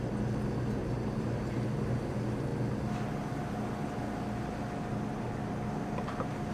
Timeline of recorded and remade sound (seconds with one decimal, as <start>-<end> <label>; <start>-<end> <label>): 0.0-0.8 recorded; 0.8-1.4 remade; 1.4-6.5 recorded